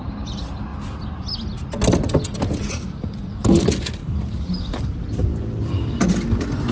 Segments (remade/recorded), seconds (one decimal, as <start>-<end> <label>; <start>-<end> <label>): 0.0-6.7 recorded